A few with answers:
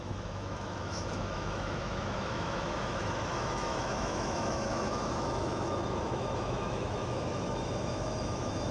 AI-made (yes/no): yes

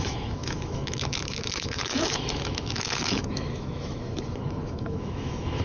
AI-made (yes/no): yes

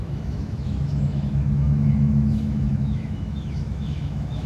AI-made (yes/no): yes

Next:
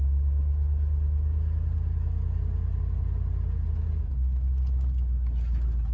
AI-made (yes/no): no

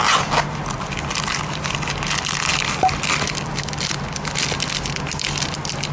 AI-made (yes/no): no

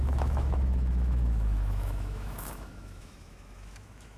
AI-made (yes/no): yes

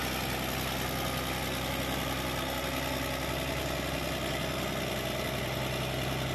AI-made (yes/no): no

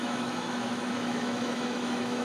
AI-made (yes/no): yes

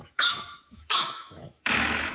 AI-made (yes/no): yes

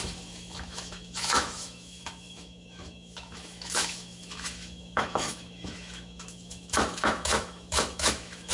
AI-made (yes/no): yes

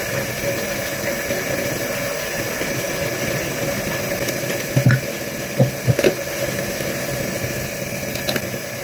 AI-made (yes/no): no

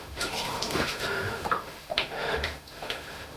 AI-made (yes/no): yes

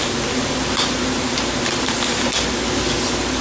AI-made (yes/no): no